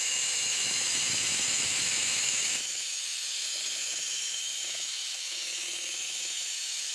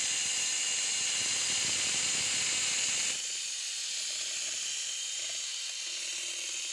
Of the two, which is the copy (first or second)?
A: first